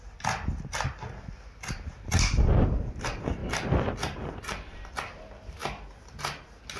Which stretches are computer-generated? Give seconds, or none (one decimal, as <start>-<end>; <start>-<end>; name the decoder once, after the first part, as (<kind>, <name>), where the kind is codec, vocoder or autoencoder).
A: none